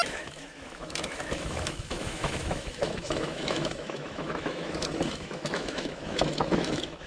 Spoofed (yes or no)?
yes